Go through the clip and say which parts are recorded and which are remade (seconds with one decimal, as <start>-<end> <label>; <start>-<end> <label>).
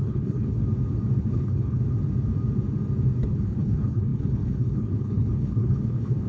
0.0-0.6 remade; 0.6-1.2 recorded; 1.2-1.8 remade; 1.8-3.2 recorded; 3.2-6.3 remade